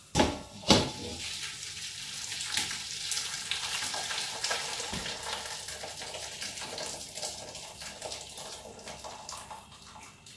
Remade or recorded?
recorded